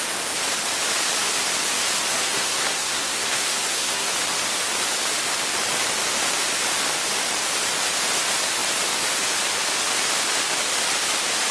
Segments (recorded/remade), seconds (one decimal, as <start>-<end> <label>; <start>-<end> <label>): 0.0-2.1 recorded; 2.1-4.1 remade; 4.1-11.5 recorded